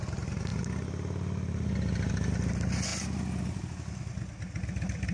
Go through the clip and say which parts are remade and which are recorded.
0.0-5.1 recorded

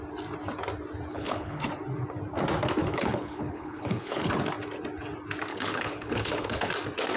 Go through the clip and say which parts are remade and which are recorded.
0.0-1.1 recorded; 1.1-1.7 remade; 1.7-2.8 recorded; 2.8-4.3 remade; 4.3-5.5 recorded; 5.5-6.7 remade; 6.7-7.2 recorded

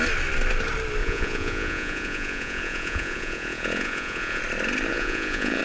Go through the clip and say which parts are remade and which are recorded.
0.0-1.0 recorded; 1.0-4.4 remade; 4.4-4.9 recorded; 4.9-5.6 remade

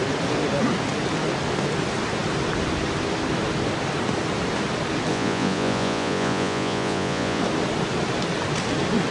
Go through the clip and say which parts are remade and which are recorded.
0.0-5.1 recorded; 5.1-7.4 remade; 7.4-9.1 recorded

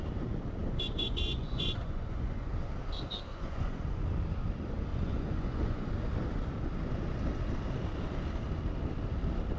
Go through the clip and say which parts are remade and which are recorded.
0.0-0.6 recorded; 0.6-2.5 remade; 2.5-3.3 recorded; 3.3-4.0 remade; 4.0-4.9 recorded; 4.9-5.9 remade; 5.9-9.6 recorded

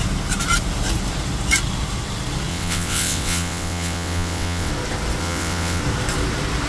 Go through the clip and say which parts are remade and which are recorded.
0.0-2.5 recorded; 2.5-4.7 remade; 4.7-5.2 recorded; 5.2-5.8 remade; 5.8-6.7 recorded

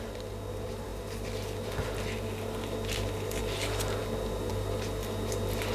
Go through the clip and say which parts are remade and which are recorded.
0.0-5.7 recorded

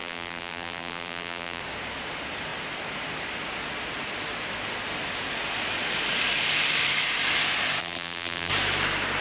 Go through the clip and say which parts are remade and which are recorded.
0.0-1.6 remade; 1.6-7.8 recorded; 7.8-8.5 remade; 8.5-9.2 recorded